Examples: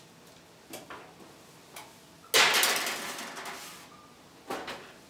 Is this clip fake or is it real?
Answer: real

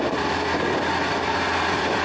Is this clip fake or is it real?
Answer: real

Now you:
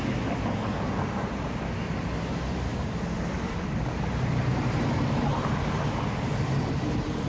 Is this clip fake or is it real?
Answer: real